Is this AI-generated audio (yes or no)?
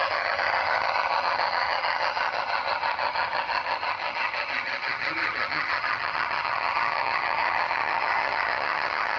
yes